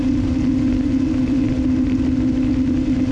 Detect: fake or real real